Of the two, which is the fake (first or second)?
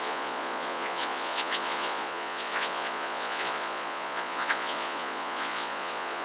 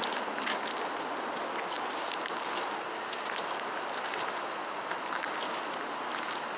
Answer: first